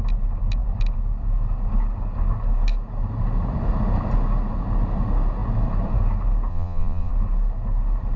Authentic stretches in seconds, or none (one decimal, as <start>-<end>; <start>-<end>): 0.0-6.5; 7.1-8.2